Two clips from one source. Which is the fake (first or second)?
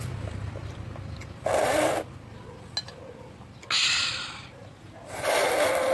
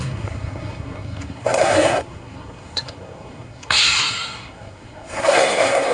second